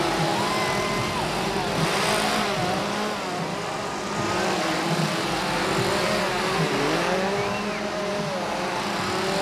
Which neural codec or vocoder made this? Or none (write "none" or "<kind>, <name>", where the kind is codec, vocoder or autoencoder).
none